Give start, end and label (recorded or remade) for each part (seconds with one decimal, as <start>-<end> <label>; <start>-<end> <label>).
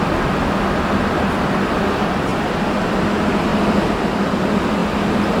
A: 0.0-2.3 recorded; 2.3-3.1 remade; 3.1-3.5 recorded; 3.5-4.1 remade; 4.1-5.4 recorded